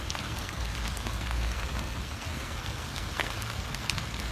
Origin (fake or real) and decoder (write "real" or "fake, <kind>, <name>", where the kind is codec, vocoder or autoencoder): fake, codec, SNAC